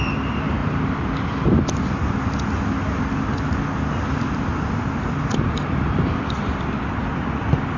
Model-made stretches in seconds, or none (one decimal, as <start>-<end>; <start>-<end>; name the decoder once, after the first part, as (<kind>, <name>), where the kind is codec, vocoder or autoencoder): none